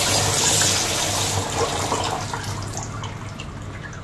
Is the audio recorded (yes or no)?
yes